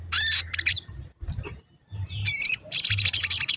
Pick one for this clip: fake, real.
real